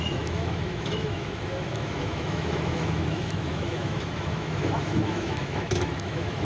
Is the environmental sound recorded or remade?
remade